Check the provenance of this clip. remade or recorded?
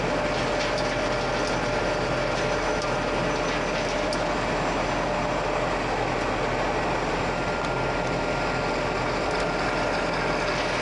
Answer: recorded